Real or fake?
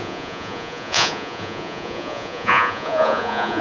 fake